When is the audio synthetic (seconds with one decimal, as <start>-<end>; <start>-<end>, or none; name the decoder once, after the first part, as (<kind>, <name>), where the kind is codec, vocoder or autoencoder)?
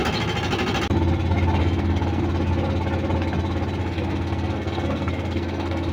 1.6-2.2 (codec, SNAC); 3.8-5.9